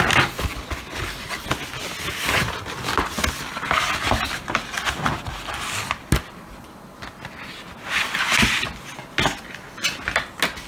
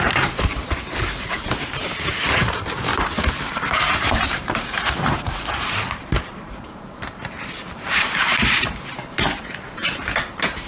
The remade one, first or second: second